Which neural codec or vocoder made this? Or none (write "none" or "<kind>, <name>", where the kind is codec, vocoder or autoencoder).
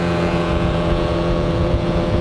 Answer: vocoder, Vocos